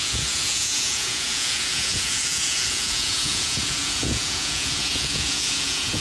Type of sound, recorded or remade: remade